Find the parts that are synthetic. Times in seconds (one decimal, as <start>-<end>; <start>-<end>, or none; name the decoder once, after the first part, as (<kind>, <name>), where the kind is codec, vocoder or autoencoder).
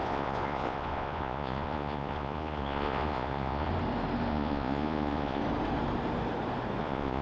0.0-3.7 (vocoder, Vocos); 4.3-5.4; 6.8-7.2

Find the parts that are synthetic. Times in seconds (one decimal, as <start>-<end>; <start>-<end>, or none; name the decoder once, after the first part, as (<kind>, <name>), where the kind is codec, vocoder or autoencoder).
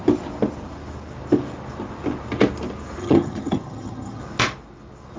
3.0-4.2 (vocoder, HiFi-GAN)